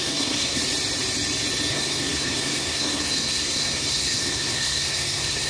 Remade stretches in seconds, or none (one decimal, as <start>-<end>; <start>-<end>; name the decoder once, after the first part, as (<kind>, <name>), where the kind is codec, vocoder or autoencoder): 0.0-0.6 (codec, SNAC); 1.7-5.5